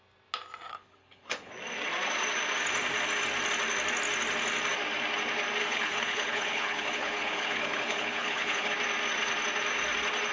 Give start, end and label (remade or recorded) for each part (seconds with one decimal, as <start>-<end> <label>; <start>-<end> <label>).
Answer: 0.0-0.7 recorded; 0.7-1.5 remade; 1.5-5.6 recorded; 5.6-8.7 remade; 8.7-10.3 recorded